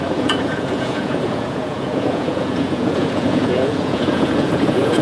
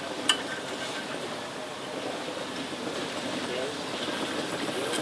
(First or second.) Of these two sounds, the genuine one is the second